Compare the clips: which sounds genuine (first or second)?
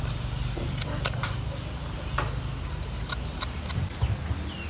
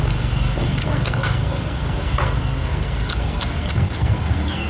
first